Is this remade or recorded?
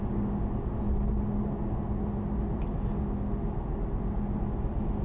recorded